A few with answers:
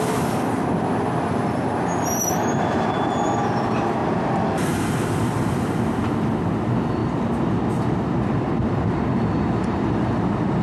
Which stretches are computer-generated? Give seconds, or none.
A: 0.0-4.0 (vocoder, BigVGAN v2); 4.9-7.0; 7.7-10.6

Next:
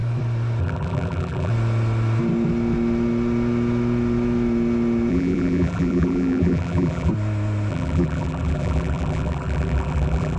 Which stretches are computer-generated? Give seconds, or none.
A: 0.6-1.5 (vocoder, BigVGAN v2); 5.1-7.1; 7.7-10.4

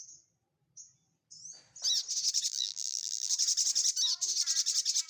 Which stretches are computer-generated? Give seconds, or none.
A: 2.5-3.3 (vocoder, BigVGAN v2)

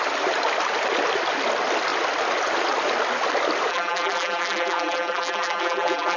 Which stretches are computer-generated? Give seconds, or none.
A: 3.7-6.2 (vocoder, BigVGAN v2)

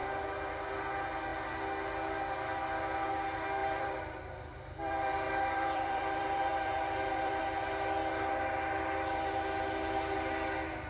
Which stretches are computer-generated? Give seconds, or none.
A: 0.0-0.7 (vocoder, BigVGAN v2); 3.6-7.4

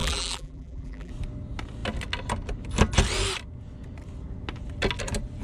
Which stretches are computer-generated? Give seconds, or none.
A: 0.0-1.1 (vocoder, BigVGAN v2)

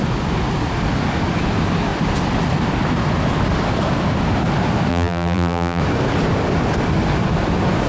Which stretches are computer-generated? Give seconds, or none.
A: 4.9-5.8 (vocoder, BigVGAN v2)